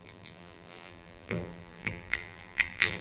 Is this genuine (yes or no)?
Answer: no